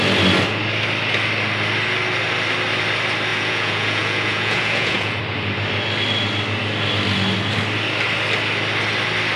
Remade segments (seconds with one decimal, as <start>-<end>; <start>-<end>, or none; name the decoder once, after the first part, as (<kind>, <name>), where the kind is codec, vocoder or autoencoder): 3.3-5.2 (vocoder, Vocos)